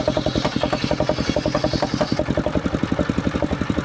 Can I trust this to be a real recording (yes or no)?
yes